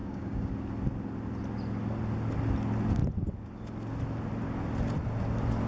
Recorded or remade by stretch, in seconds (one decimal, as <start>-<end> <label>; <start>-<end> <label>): 0.0-0.5 remade; 0.5-5.7 recorded